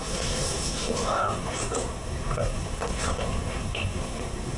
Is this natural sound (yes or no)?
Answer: no